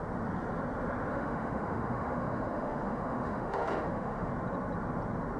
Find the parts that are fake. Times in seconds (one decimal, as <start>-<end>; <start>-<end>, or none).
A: 1.1-4.3